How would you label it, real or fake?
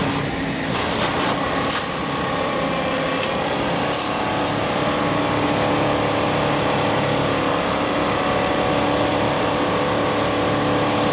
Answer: real